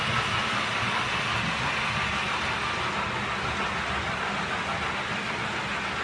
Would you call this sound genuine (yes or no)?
yes